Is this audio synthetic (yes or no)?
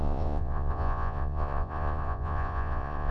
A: yes